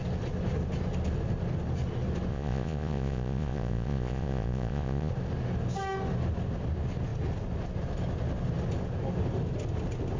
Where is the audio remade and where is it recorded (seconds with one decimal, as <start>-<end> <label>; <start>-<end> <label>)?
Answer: 0.0-2.3 recorded; 2.3-5.1 remade; 5.1-10.2 recorded